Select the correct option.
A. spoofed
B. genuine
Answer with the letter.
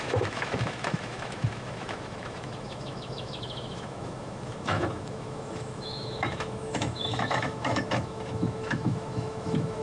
A